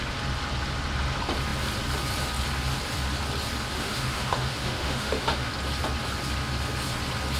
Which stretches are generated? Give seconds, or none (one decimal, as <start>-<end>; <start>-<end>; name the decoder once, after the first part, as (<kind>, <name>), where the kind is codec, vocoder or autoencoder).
3.7-5.5 (autoencoder, DAC-VAE)